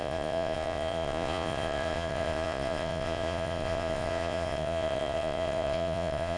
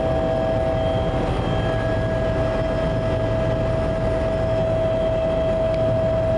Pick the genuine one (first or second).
second